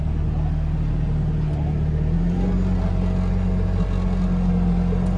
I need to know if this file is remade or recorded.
recorded